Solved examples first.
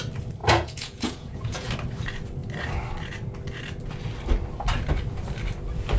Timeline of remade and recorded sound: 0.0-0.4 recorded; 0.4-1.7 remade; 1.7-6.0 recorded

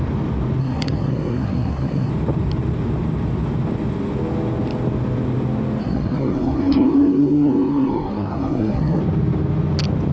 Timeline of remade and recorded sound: 0.0-0.6 recorded; 0.6-2.1 remade; 2.1-5.8 recorded; 5.8-9.0 remade; 9.0-10.1 recorded